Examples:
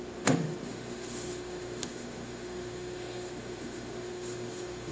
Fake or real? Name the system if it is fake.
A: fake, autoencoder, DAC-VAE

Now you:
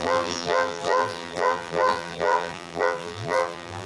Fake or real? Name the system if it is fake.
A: fake, vocoder, BigVGAN v2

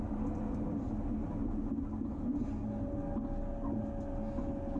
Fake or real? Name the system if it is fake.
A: real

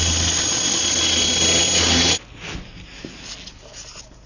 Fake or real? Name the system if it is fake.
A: real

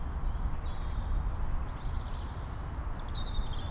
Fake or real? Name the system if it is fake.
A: real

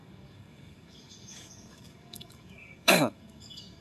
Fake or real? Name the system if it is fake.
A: fake, codec, DAC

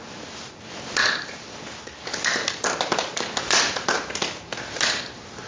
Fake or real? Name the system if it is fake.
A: real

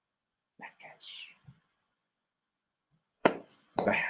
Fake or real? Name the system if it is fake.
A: fake, vocoder, Vocos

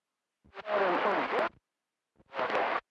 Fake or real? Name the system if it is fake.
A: real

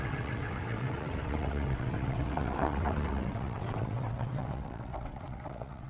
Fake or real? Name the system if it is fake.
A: fake, vocoder, WaveNeXt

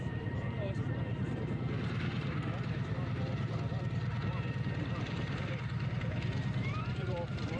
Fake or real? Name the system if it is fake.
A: fake, vocoder, BigVGAN v2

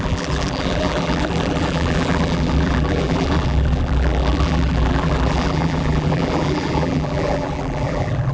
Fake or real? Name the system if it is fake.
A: fake, vocoder, BigVGAN v2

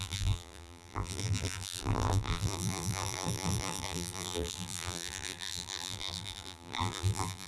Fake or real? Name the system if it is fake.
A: fake, vocoder, BigVGAN v2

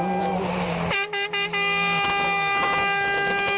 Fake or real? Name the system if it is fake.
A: real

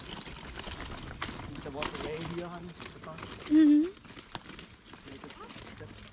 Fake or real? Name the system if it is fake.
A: real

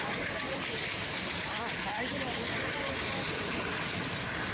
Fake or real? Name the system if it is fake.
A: fake, vocoder, BigVGAN v2